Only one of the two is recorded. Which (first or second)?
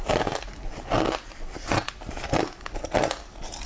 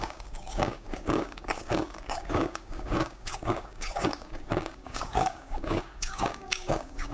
first